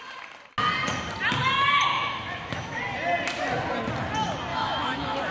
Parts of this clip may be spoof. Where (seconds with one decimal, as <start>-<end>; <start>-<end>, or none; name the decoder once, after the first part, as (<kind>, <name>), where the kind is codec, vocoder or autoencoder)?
1.9-2.8 (autoencoder, DAC-VAE); 4.5-5.3